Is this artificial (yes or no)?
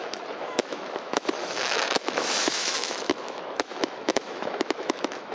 yes